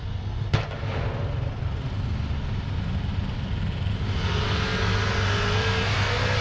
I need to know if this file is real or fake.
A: real